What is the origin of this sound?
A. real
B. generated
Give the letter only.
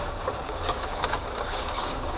B